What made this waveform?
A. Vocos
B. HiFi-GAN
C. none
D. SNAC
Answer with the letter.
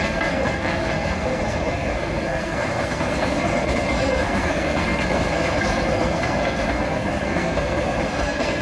D